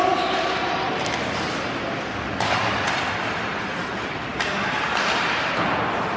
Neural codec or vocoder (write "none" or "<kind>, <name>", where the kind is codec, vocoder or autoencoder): none